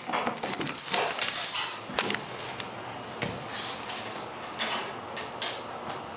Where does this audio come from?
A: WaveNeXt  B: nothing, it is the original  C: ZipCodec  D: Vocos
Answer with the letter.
B